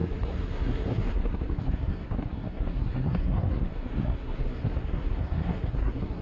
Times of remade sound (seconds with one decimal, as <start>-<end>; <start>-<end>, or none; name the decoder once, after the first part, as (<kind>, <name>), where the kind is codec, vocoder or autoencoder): 0.0-6.2 (codec, SNAC)